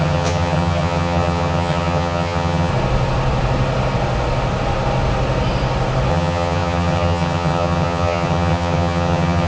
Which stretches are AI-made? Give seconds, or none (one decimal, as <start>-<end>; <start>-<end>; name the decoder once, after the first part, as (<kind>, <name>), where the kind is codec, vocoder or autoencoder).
0.0-2.7 (vocoder, HiFi-GAN); 6.1-9.5